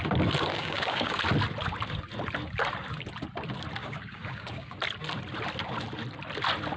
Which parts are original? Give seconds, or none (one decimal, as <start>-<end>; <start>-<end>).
0.0-0.5; 1.2-3.8; 4.8-6.8